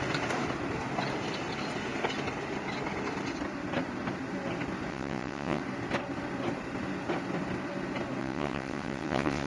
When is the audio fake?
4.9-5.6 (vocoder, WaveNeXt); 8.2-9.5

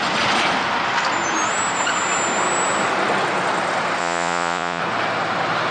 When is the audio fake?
4.0-4.8 (vocoder, Vocos)

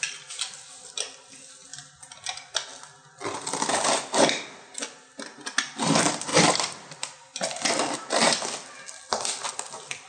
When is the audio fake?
none

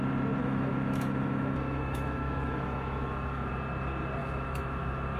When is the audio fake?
0.4-3.5 (autoencoder, DAC-VAE); 4.2-5.2

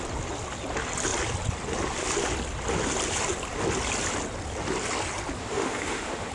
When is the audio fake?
5.4-6.3 (autoencoder, DAC-VAE)

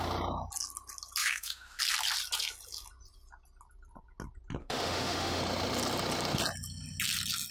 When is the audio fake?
1.2-1.8 (autoencoder, DAC-VAE); 4.6-5.4

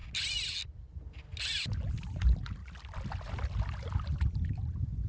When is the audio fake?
none

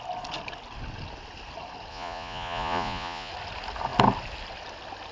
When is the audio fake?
1.9-3.3 (vocoder, Vocos)